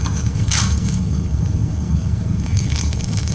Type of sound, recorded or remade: remade